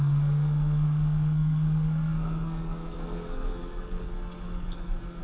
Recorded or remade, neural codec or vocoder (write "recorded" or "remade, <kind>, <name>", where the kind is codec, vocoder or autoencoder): remade, codec, SNAC